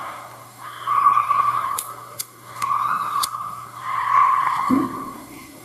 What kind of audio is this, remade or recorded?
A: remade